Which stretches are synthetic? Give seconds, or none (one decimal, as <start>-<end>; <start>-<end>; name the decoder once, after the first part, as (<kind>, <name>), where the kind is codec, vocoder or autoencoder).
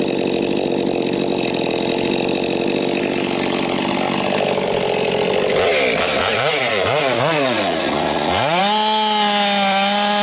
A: 6.3-8.6 (vocoder, Vocos)